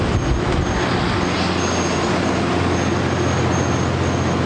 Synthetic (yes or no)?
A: no